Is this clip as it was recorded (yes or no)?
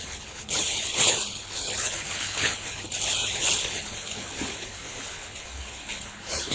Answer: no